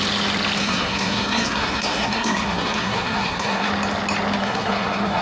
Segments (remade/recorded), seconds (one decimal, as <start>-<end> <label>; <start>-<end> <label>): 0.0-0.6 recorded; 0.6-3.7 remade; 3.7-4.4 recorded; 4.4-5.2 remade